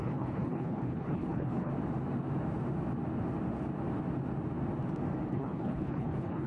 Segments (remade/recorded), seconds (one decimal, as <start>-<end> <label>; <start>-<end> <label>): 0.0-1.7 remade; 1.7-5.3 recorded; 5.3-6.5 remade